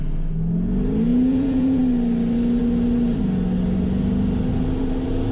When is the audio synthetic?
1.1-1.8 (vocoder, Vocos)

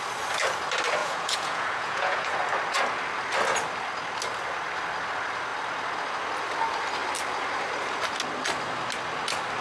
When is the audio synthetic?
1.0-2.3 (vocoder, Vocos)

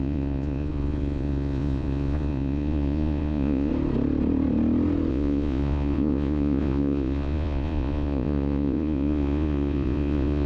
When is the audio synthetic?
0.0-3.7 (vocoder, Vocos); 5.1-10.5

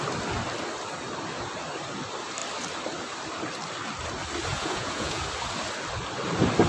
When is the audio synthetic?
4.5-5.2 (vocoder, Vocos)

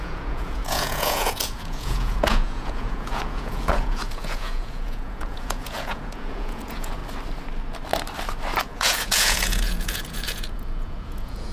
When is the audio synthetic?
0.0-7.0 (vocoder, Vocos); 8.6-11.5

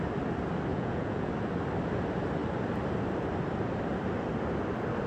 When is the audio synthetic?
0.7-1.3 (vocoder, Vocos)